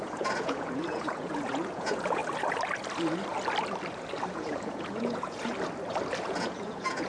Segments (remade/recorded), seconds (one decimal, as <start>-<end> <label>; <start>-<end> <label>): 0.0-2.2 remade; 2.2-4.3 recorded; 4.3-5.5 remade; 5.5-6.2 recorded; 6.2-7.1 remade